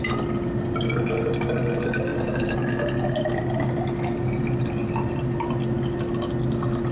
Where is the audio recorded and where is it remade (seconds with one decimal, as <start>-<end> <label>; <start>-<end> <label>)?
0.0-6.9 recorded